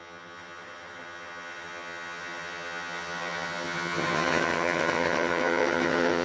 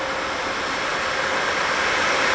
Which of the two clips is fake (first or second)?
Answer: first